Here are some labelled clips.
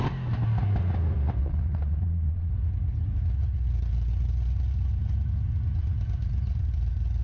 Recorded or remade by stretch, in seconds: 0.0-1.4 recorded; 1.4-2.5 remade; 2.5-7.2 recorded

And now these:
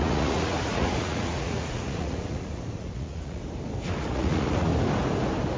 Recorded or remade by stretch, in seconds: 0.0-3.4 remade; 3.4-4.1 recorded; 4.1-4.7 remade; 4.7-5.6 recorded

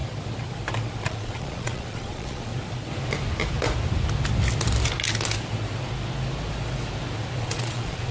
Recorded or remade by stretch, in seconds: 0.0-1.0 recorded; 1.0-2.5 remade; 2.5-7.4 recorded; 7.4-8.1 remade

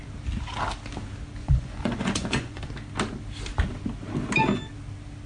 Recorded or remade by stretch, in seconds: 0.0-1.4 recorded; 1.4-2.6 remade; 2.6-5.3 recorded

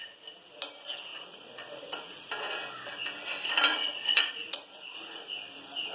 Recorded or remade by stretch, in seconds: 0.0-1.1 recorded; 1.1-2.3 remade; 2.3-3.7 recorded; 3.7-5.4 remade; 5.4-5.9 recorded

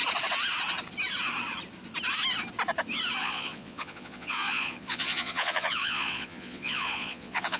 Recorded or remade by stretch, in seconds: 0.0-3.2 recorded; 3.2-7.6 remade

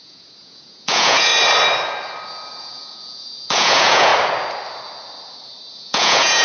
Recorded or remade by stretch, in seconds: 0.0-1.3 remade; 1.3-2.6 recorded; 2.6-4.1 remade; 4.1-5.7 recorded; 5.7-6.4 remade

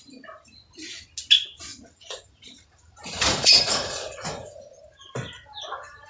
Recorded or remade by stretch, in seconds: 0.0-1.7 recorded; 1.7-4.8 remade; 4.8-6.1 recorded